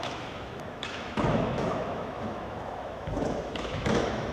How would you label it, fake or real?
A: fake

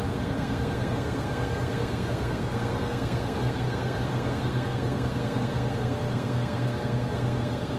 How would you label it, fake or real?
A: fake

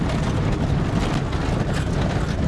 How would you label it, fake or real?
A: real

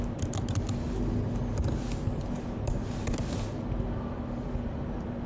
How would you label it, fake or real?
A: real